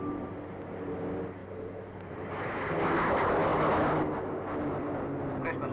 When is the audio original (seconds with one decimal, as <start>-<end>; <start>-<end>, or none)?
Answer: 0.0-1.4; 2.2-5.7

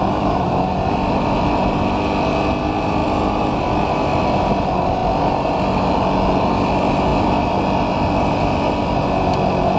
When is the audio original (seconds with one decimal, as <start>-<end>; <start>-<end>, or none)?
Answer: 0.0-9.8

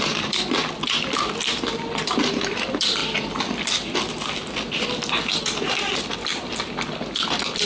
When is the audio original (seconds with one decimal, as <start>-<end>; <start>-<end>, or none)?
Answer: 0.6-1.2; 3.0-3.6; 6.3-7.7

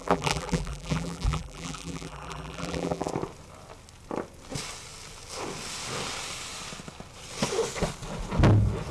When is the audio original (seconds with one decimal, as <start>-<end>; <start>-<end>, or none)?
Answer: 3.1-8.9

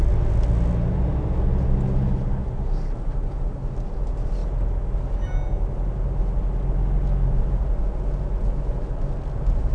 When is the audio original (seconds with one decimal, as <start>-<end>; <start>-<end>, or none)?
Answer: 0.0-9.7